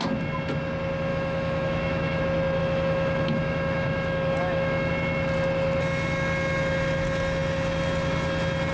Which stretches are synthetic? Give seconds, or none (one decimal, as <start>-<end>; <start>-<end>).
1.1-2.2; 2.6-4.9